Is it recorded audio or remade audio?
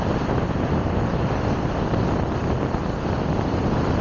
recorded